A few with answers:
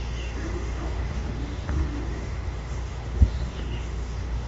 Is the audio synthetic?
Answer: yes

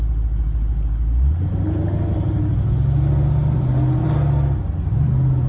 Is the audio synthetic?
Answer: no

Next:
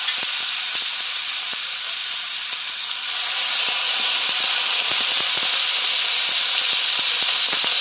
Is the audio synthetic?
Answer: no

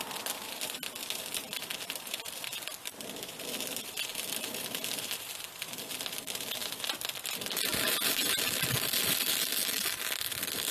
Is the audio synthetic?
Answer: yes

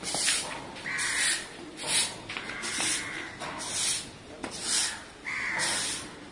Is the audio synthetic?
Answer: no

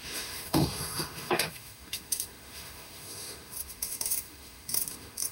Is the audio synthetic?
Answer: yes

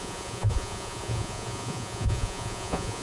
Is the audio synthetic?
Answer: yes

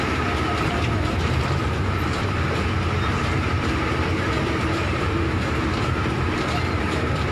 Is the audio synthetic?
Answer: yes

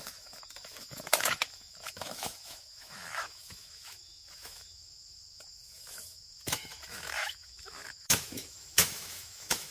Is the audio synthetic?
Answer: yes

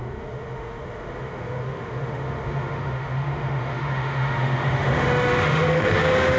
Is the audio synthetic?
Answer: yes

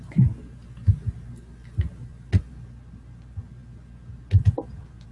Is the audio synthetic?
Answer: no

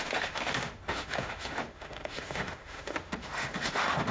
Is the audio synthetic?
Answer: yes